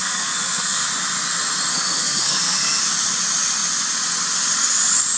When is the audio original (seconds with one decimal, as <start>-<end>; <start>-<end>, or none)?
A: 0.9-1.7; 2.8-5.2